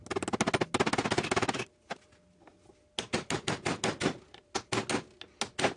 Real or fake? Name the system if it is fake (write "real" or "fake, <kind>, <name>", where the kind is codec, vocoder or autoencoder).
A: real